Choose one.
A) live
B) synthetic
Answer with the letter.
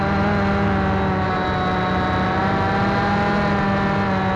A